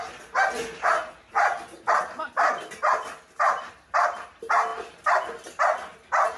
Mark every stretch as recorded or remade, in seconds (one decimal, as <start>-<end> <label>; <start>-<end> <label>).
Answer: 0.0-6.4 recorded